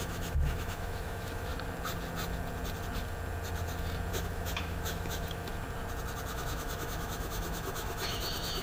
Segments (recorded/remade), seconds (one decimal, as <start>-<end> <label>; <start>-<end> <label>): 0.0-1.5 remade; 1.5-4.1 recorded; 4.1-5.5 remade; 5.5-6.3 recorded; 6.3-8.6 remade